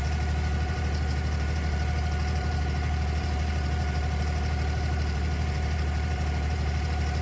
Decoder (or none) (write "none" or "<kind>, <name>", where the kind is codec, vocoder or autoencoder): vocoder, BigVGAN v2